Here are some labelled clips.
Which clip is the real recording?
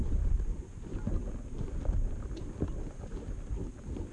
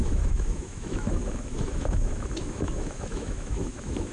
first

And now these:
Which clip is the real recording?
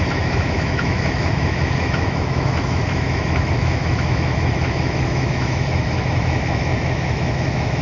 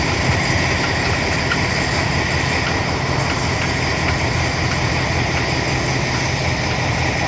second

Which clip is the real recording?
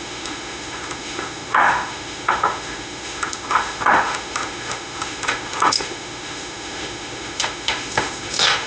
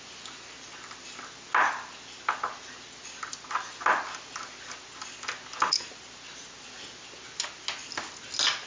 second